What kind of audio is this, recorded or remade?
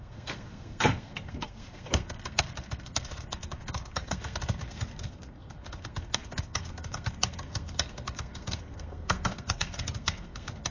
remade